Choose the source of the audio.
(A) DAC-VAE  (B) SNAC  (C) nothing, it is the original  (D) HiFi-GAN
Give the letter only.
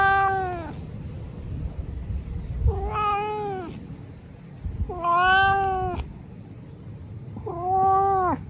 C